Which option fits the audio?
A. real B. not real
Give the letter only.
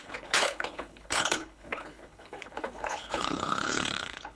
B